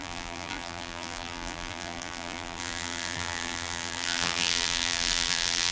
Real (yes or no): no